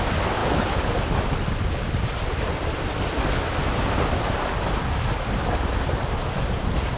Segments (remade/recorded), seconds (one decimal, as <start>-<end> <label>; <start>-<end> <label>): 0.0-7.0 recorded